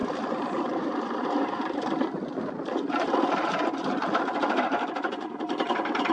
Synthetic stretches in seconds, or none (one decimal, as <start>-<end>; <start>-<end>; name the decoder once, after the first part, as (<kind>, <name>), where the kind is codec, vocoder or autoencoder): 0.0-4.0 (vocoder, BigVGAN v2); 4.9-6.1